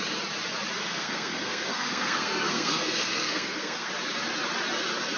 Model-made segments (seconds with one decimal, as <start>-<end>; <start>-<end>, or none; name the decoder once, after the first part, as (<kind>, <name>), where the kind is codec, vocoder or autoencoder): 0.8-3.9 (codec, SNAC)

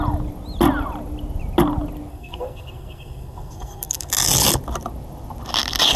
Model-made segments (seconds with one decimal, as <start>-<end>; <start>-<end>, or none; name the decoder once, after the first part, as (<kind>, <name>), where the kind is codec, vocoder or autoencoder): 2.1-4.1 (codec, SNAC)

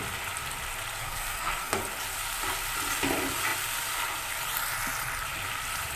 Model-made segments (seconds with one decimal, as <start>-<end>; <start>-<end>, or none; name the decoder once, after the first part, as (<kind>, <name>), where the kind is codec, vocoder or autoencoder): 1.0-1.8 (codec, SNAC)

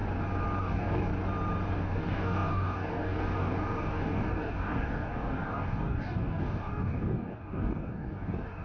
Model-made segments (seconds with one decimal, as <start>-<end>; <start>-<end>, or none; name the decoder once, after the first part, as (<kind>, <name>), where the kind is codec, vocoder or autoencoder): 0.6-1.1 (codec, DAC); 1.7-8.6

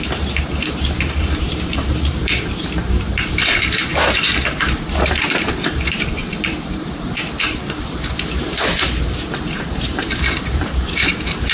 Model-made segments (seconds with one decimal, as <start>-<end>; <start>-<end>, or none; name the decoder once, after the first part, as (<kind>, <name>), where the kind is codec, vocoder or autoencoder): 0.0-11.5 (vocoder, BigVGAN v2)